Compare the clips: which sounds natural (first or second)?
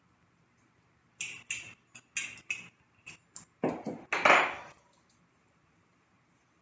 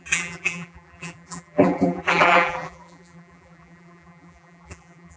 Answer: first